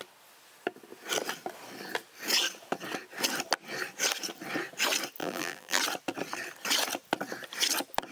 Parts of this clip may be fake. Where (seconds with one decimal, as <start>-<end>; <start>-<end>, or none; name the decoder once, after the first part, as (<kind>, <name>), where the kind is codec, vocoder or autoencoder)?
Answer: 5.2-5.8 (vocoder, BigVGAN v2)